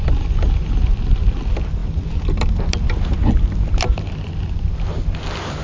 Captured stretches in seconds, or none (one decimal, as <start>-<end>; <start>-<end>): 0.0-5.6